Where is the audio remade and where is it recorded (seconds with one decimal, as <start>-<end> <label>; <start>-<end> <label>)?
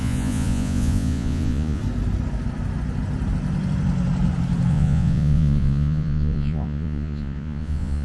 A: 0.0-1.8 remade; 1.8-4.7 recorded; 4.7-8.0 remade